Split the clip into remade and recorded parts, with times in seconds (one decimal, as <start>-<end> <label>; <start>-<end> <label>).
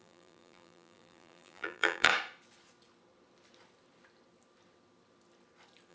0.0-2.1 remade; 2.1-5.9 recorded